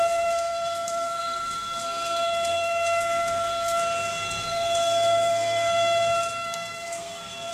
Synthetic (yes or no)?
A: yes